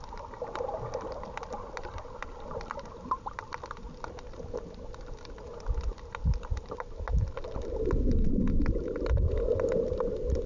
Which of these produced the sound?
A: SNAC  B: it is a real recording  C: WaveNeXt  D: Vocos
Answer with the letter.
B